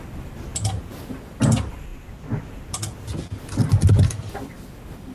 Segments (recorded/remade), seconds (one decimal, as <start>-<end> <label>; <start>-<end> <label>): 0.0-0.5 remade; 0.5-1.1 recorded; 1.1-1.9 remade; 1.9-4.3 recorded; 4.3-5.1 remade